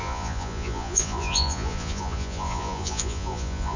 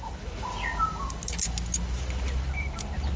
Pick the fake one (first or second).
first